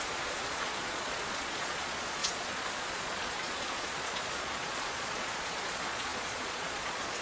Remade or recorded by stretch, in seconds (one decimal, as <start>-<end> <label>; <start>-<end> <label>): 0.0-7.2 remade